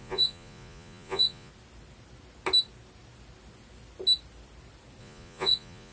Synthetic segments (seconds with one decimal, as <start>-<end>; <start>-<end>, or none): 0.0-1.5; 5.0-5.9